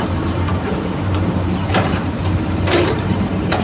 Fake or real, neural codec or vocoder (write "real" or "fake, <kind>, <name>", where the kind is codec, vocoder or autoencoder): fake, vocoder, BigVGAN v2